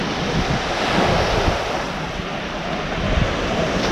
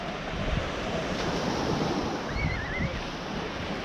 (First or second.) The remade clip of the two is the second